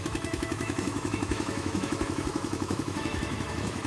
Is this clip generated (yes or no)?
yes